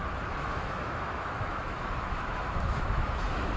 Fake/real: fake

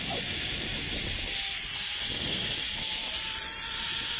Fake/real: real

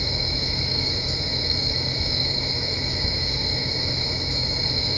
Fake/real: fake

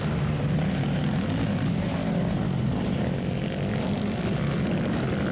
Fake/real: real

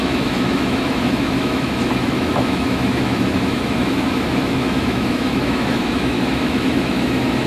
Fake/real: fake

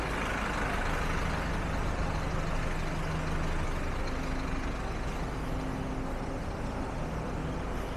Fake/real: real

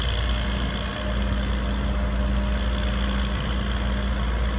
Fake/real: real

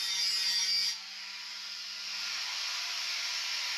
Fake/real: real